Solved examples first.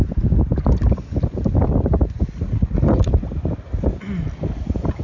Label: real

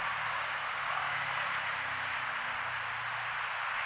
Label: real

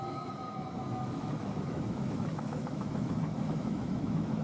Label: fake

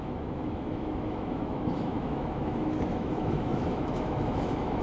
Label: fake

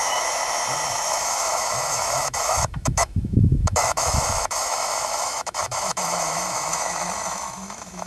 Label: fake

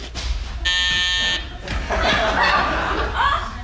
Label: real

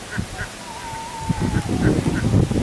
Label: real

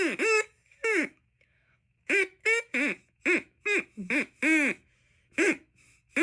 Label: fake